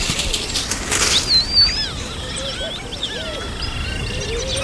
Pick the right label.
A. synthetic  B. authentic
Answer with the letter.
B